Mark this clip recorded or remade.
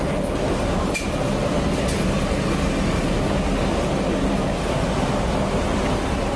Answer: recorded